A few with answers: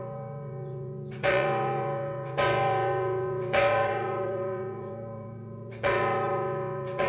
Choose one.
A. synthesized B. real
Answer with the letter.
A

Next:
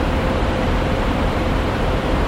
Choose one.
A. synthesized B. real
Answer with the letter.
A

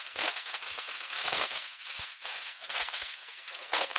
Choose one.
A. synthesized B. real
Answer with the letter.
A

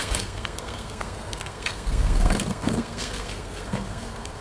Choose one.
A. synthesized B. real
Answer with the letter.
A